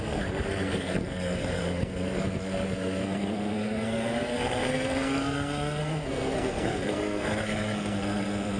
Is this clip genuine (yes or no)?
no